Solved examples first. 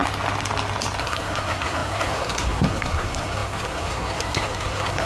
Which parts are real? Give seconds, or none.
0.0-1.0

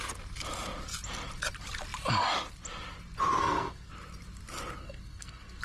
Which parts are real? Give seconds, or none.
0.0-3.4; 3.9-4.8

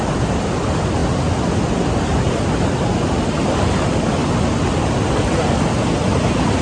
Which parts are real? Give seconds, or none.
0.0-6.6